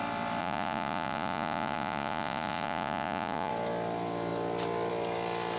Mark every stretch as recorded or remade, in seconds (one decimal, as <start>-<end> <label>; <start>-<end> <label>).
0.0-0.4 recorded; 0.4-3.5 remade; 3.5-5.6 recorded

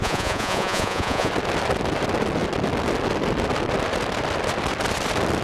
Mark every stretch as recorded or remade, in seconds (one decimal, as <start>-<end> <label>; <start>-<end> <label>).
0.0-1.3 remade; 1.3-5.4 recorded

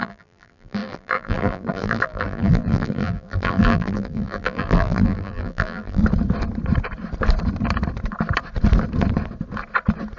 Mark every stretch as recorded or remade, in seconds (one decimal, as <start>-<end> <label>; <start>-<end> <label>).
0.0-6.0 remade; 6.0-10.2 recorded